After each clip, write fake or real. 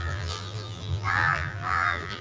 fake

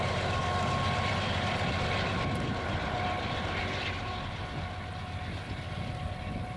real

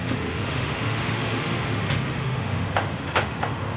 fake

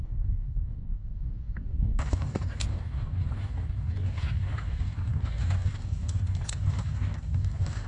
fake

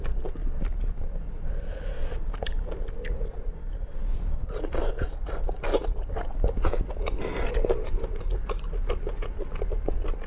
real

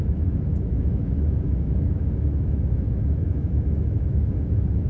fake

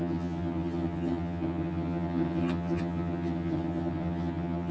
fake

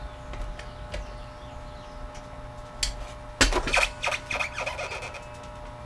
real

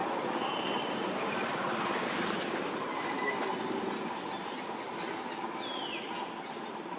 real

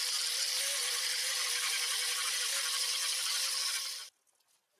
real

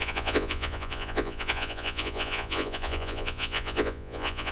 fake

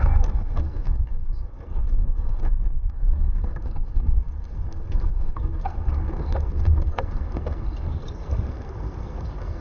fake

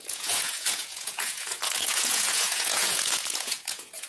fake